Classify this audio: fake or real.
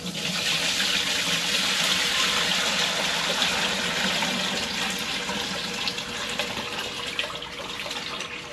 real